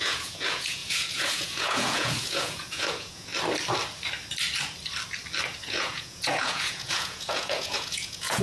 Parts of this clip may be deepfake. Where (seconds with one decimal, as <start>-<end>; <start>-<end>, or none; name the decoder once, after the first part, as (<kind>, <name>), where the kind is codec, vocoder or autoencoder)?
0.0-3.3 (vocoder, Vocos); 5.7-8.4